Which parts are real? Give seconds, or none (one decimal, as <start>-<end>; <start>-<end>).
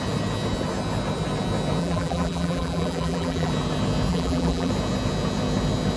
0.0-1.8; 3.5-4.1; 4.7-6.0